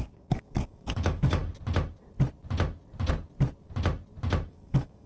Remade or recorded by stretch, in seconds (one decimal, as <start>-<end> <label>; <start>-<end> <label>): 0.0-1.4 remade; 1.4-4.5 recorded; 4.5-5.1 remade